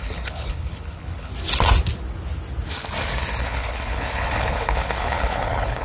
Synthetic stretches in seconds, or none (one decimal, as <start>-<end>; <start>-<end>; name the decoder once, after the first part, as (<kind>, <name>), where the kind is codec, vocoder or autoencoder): 0.0-1.3 (codec, HILCodec); 3.4-5.8